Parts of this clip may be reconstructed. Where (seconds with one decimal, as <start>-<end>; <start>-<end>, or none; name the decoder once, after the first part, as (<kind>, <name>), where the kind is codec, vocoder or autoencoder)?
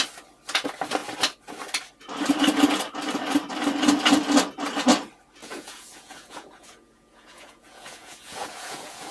5.4-9.1 (vocoder, Vocos)